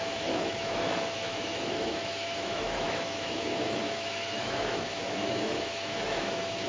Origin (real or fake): fake